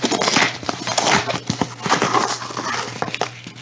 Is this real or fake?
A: real